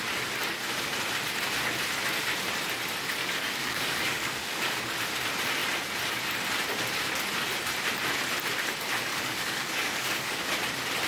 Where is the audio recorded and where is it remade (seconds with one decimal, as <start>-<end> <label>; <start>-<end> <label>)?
0.0-3.2 recorded; 3.2-4.9 remade; 4.9-9.1 recorded; 9.1-10.4 remade; 10.4-11.1 recorded

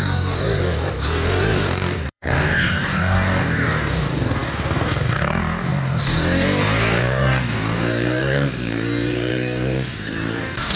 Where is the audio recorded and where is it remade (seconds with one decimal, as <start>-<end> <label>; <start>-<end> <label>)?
0.0-10.8 remade

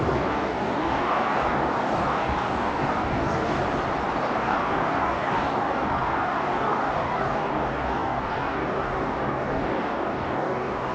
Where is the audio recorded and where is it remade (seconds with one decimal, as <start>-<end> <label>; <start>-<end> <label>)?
0.0-3.6 remade; 3.6-4.2 recorded; 4.2-10.9 remade

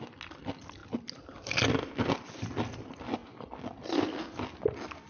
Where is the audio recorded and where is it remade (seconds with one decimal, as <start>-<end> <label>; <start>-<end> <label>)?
0.0-5.1 recorded

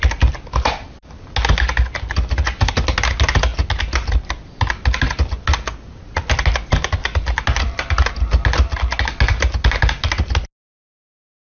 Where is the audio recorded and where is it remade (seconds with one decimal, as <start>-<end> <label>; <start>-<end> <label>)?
0.0-11.5 recorded